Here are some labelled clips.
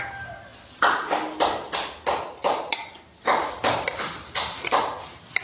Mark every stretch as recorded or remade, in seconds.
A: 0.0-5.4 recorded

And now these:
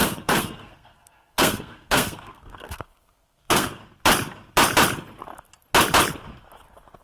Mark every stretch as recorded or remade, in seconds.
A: 0.0-3.8 remade; 3.8-7.0 recorded

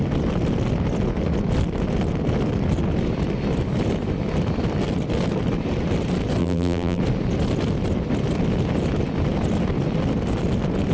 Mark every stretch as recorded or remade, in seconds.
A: 0.0-6.4 recorded; 6.4-7.0 remade; 7.0-10.9 recorded

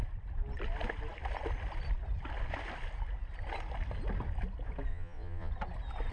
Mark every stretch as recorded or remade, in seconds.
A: 0.0-4.9 recorded; 4.9-5.5 remade; 5.5-6.1 recorded

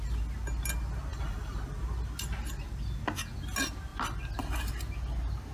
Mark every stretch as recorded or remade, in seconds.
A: 0.0-1.1 recorded; 1.1-1.6 remade; 1.6-5.5 recorded

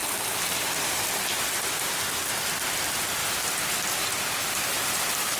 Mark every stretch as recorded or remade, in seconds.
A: 0.0-5.4 recorded